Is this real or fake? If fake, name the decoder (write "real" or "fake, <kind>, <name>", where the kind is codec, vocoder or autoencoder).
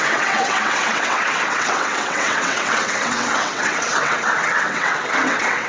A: fake, vocoder, WaveNeXt